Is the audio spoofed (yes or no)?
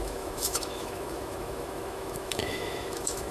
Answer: yes